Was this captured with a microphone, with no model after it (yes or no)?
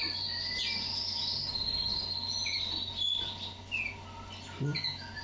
yes